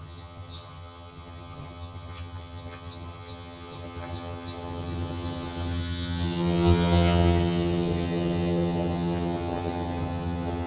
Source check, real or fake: fake